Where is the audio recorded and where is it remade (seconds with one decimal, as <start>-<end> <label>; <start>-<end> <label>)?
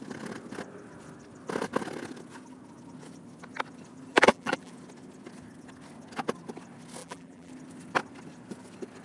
0.0-4.1 recorded; 4.1-4.7 remade; 4.7-7.0 recorded; 7.0-7.5 remade; 7.5-9.0 recorded